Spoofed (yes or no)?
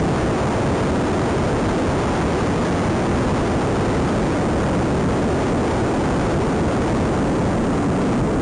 no